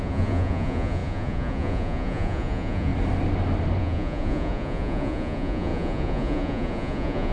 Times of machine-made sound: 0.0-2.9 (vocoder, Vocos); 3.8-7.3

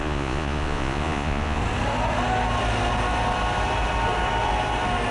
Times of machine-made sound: 0.0-1.6 (vocoder, Vocos)

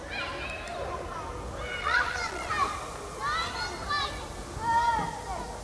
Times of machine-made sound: 1.8-2.5 (vocoder, Vocos)